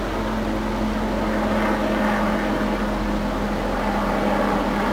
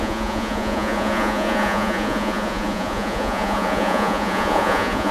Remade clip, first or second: second